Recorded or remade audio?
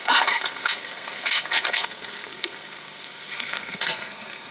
remade